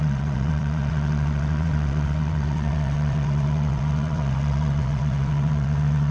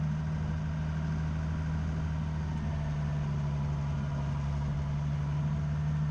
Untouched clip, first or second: second